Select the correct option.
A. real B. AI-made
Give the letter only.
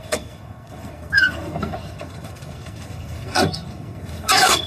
B